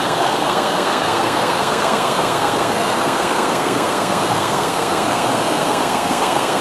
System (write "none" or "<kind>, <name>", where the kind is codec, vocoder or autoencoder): codec, SNAC